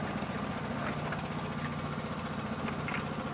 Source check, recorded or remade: recorded